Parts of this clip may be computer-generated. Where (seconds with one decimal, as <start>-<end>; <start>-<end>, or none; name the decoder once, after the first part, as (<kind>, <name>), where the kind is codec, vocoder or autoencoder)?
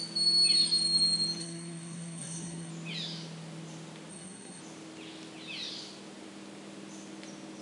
1.4-2.7 (codec, SNAC); 4.1-4.6